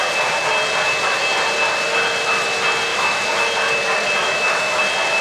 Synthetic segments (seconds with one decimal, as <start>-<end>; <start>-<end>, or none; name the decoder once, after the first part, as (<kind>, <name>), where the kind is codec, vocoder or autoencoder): 2.9-3.5 (autoencoder, DAC-VAE); 4.2-4.8